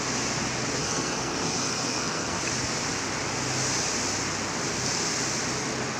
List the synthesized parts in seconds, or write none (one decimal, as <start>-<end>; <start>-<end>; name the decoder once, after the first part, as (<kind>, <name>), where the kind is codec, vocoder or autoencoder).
0.8-2.4 (codec, SNAC)